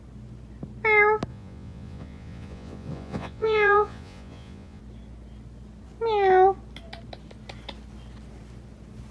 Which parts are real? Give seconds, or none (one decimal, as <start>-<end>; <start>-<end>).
0.0-1.3; 4.8-9.1